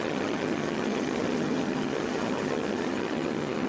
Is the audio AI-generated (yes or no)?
yes